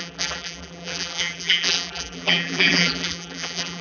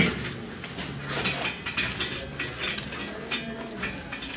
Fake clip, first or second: first